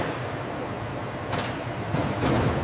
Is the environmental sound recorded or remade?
recorded